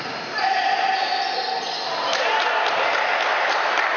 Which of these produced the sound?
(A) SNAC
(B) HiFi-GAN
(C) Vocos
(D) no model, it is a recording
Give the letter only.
D